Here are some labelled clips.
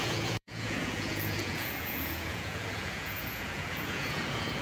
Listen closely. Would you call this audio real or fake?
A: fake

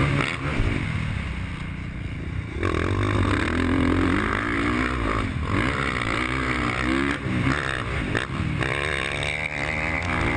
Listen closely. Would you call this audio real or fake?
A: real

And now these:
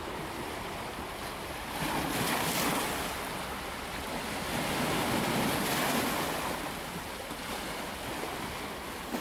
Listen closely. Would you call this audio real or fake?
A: real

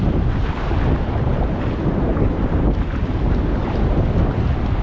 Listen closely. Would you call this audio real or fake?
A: real